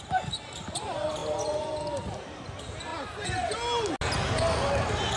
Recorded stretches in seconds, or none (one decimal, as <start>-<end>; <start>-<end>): 0.0-5.2